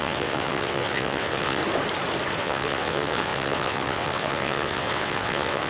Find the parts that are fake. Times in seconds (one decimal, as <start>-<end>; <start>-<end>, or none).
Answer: 0.0-1.6; 2.4-5.7